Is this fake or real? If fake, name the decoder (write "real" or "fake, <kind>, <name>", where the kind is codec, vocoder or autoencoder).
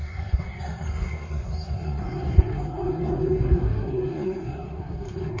fake, codec, SNAC